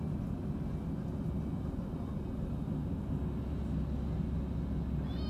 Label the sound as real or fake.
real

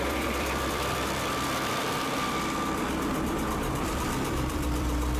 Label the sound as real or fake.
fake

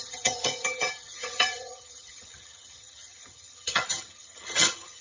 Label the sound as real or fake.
fake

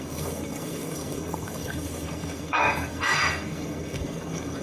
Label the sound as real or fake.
fake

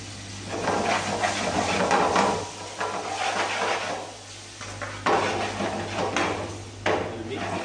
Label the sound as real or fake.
real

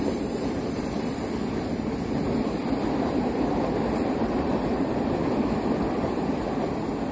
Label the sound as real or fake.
fake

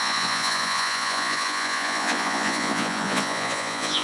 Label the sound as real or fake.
fake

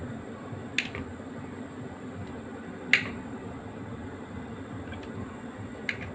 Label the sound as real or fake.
real